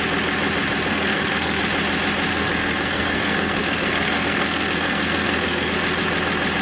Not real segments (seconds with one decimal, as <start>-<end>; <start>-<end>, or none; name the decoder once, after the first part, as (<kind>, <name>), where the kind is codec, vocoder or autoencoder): 0.9-1.6 (codec, SNAC); 2.3-5.7